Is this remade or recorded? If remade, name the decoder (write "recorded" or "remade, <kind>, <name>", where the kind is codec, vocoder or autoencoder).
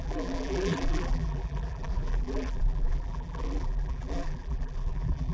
remade, vocoder, BigVGAN v2